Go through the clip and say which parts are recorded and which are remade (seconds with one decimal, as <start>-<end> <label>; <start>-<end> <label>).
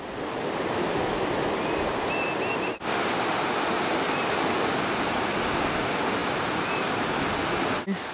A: 0.0-8.1 recorded